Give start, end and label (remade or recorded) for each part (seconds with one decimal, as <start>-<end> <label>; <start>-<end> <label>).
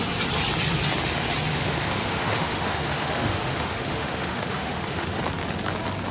0.0-1.5 recorded; 1.5-5.2 remade; 5.2-6.1 recorded